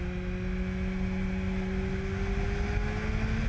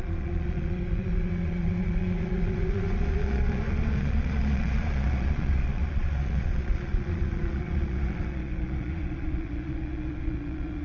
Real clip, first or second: first